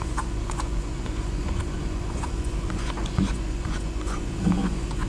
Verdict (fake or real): fake